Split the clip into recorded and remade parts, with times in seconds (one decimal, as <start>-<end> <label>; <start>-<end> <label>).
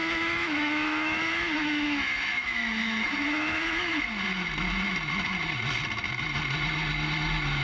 0.0-4.0 remade; 4.0-7.6 recorded